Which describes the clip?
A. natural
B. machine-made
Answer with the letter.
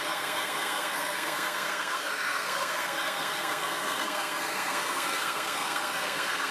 B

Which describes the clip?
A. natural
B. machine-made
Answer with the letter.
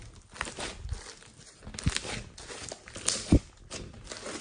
A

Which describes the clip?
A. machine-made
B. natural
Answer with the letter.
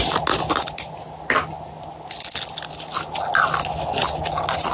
B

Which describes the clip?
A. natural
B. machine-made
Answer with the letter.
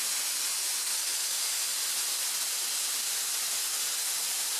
A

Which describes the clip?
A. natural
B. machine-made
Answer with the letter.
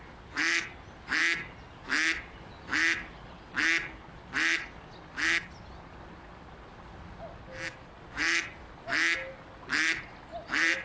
A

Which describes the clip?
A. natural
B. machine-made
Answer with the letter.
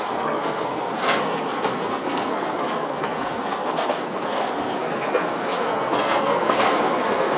B